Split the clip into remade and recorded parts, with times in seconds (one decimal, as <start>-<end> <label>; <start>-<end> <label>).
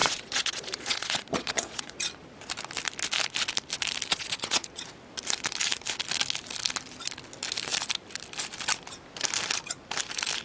0.0-2.0 remade; 2.0-4.1 recorded; 4.1-4.8 remade; 4.8-10.4 recorded